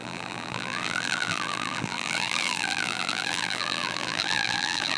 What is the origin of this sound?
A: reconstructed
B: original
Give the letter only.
A